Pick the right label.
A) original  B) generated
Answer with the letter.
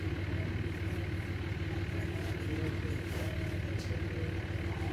A